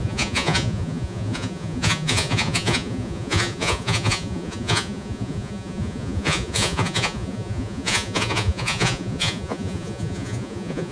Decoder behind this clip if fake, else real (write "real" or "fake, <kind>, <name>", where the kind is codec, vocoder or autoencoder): fake, vocoder, Vocos